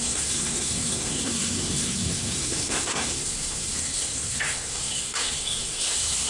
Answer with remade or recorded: remade